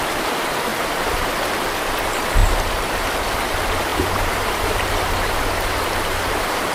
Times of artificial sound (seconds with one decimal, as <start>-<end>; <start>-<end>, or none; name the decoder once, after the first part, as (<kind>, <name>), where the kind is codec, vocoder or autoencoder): 0.7-1.3 (vocoder, BigVGAN v2); 3.9-5.1